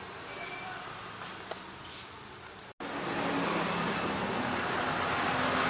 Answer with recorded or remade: recorded